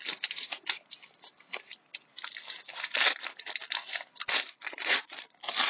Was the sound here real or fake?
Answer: real